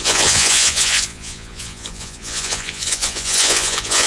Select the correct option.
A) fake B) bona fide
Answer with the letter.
A